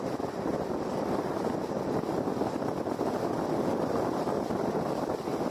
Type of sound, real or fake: real